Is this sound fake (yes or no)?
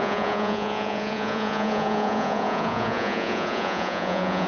yes